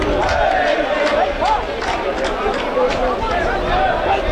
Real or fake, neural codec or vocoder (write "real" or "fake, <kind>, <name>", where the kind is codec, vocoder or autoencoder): real